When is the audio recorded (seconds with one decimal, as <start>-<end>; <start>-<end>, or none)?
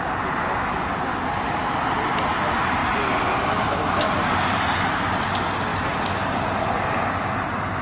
0.0-2.8; 3.6-5.7; 6.7-7.8